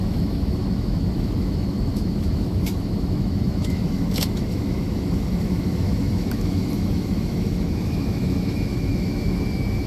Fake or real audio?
fake